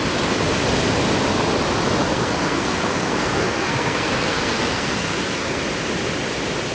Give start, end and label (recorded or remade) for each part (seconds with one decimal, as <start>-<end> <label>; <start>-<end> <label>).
0.0-2.0 recorded; 2.0-5.6 remade; 5.6-6.7 recorded